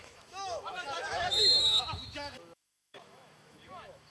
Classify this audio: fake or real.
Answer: fake